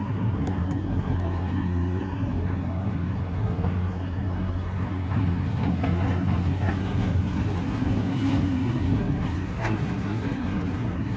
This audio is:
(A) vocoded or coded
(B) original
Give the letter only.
A